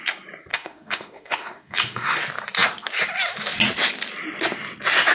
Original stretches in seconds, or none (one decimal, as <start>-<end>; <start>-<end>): 0.0-0.5; 2.2-5.1